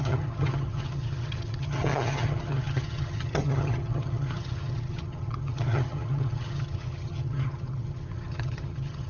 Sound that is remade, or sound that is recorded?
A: remade